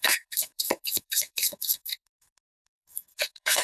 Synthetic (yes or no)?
yes